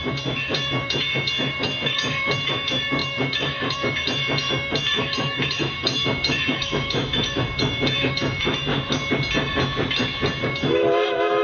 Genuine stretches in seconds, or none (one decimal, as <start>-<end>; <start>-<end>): 8.7-10.4